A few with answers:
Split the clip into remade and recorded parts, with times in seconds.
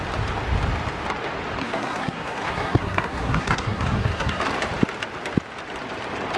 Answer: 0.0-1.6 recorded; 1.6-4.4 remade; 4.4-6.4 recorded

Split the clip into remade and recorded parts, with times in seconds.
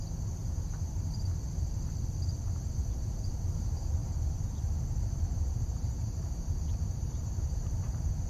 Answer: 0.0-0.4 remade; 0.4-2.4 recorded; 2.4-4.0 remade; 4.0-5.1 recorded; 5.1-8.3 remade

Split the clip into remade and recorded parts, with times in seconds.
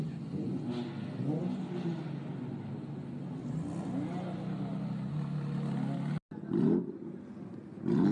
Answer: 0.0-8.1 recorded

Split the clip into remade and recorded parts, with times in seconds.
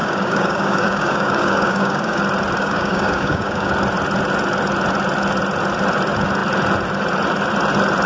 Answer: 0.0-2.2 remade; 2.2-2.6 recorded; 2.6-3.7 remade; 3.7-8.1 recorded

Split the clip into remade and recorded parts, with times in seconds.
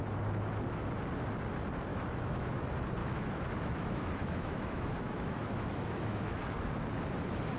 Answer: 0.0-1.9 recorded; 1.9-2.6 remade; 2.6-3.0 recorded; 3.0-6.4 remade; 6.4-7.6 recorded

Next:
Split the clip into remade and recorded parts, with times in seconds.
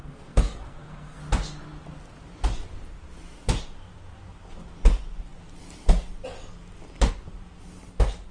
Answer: 0.0-1.2 remade; 1.2-8.3 recorded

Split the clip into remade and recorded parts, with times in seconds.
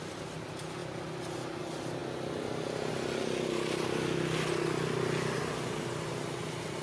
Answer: 0.0-6.8 recorded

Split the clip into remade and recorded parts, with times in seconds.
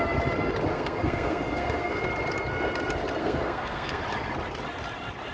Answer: 0.0-0.7 recorded; 0.7-2.0 remade; 2.0-3.2 recorded; 3.2-4.0 remade; 4.0-5.3 recorded